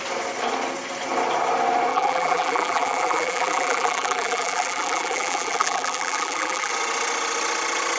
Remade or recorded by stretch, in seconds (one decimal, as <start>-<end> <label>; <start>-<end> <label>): 0.0-1.9 recorded; 1.9-6.7 remade; 6.7-8.0 recorded